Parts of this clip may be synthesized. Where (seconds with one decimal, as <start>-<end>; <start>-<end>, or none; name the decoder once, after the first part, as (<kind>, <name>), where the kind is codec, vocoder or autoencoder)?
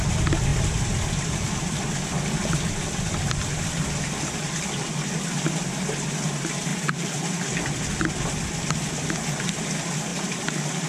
0.5-4.2 (vocoder, BigVGAN v2); 6.7-8.1; 10.1-10.9